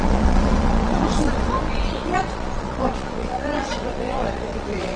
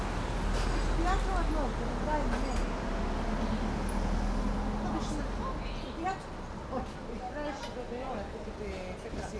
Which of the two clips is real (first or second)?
second